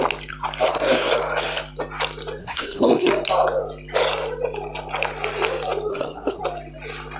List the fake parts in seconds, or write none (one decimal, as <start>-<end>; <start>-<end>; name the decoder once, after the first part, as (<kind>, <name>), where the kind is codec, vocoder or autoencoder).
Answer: 2.4-3.1 (codec, SNAC); 5.9-6.4